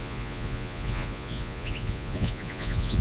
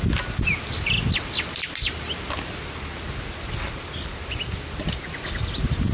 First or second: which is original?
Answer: second